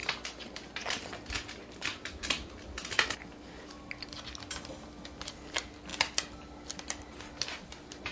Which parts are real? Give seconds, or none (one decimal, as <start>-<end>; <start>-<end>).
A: 0.0-8.1